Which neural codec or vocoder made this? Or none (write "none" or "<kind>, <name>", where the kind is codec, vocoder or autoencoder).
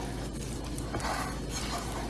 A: none